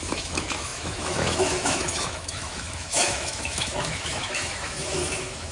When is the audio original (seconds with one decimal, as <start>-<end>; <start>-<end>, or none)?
none